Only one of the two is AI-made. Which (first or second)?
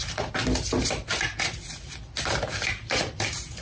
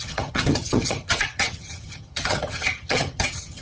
second